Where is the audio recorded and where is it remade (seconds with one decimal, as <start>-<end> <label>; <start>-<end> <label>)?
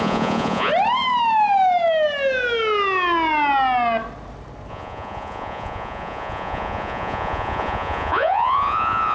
0.0-0.7 remade; 0.7-4.7 recorded; 4.7-9.1 remade